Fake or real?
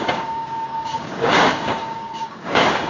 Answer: fake